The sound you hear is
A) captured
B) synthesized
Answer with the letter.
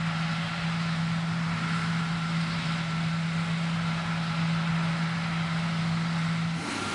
A